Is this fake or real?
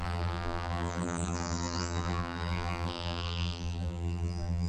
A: fake